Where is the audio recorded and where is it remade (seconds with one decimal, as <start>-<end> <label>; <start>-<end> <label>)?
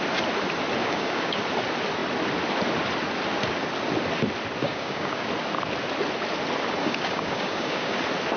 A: 0.0-0.8 recorded; 0.8-1.4 remade; 1.4-4.6 recorded; 4.6-5.3 remade; 5.3-6.8 recorded; 6.8-8.0 remade; 8.0-8.4 recorded